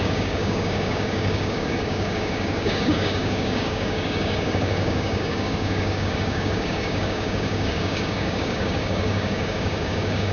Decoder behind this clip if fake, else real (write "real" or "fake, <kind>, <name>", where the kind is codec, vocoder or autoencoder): fake, codec, DAC